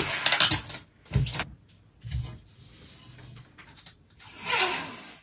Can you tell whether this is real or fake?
real